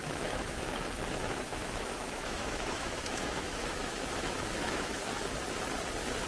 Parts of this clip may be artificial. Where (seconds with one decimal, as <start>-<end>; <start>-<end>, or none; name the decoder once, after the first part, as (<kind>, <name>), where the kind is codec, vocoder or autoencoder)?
0.0-0.7 (autoencoder, DAC-VAE); 1.2-5.0